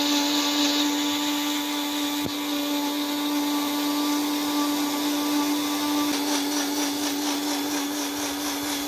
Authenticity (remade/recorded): recorded